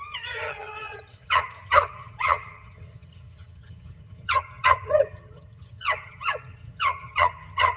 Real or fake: fake